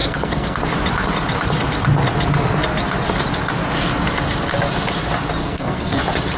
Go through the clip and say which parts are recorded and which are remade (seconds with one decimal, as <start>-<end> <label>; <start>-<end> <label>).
0.0-0.6 remade; 0.6-5.4 recorded; 5.4-6.0 remade; 6.0-6.4 recorded